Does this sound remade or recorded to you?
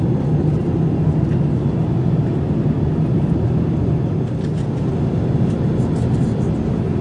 recorded